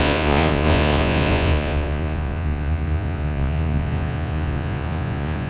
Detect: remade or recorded remade